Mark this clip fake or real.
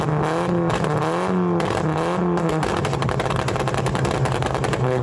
real